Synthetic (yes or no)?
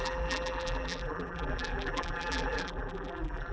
yes